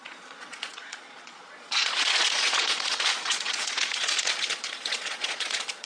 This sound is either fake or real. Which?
fake